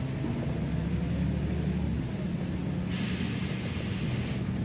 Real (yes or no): yes